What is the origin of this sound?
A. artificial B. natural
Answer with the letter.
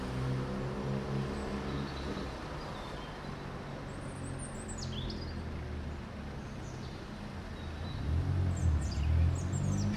B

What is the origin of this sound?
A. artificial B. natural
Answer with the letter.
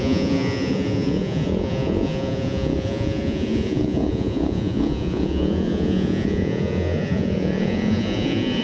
A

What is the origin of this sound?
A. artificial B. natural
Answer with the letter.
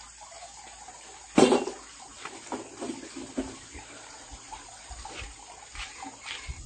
B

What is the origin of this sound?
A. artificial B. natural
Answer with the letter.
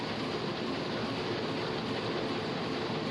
B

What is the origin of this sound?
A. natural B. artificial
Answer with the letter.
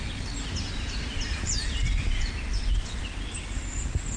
A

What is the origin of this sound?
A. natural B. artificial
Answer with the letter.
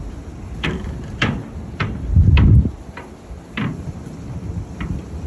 A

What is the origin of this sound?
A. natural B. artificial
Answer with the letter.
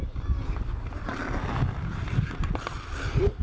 A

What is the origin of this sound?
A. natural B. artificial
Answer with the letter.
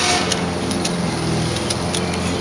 A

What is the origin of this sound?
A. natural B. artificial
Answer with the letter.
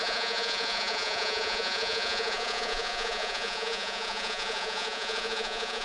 B